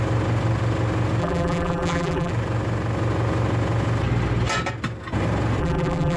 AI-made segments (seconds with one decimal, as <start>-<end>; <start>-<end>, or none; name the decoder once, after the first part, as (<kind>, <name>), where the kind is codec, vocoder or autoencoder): 1.2-2.3 (vocoder, BigVGAN v2); 5.6-6.2